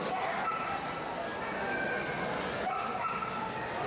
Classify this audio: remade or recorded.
recorded